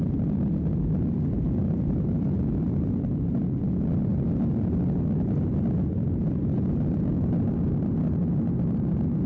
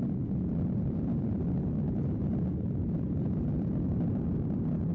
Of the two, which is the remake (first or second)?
second